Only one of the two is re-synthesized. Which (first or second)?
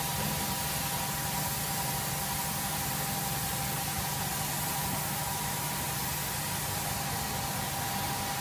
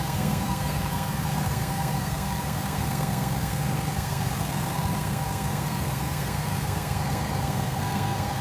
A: second